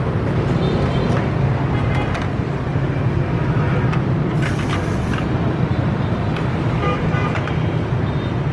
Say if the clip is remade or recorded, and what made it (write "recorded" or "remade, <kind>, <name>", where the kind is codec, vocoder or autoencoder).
recorded